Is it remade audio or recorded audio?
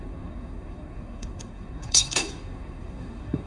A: remade